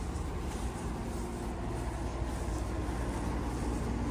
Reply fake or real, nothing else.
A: real